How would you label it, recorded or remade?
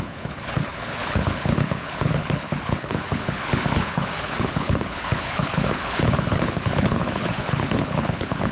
remade